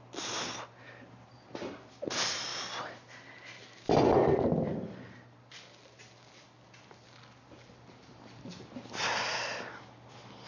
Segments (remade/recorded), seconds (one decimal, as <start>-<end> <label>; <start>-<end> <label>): 0.0-10.5 recorded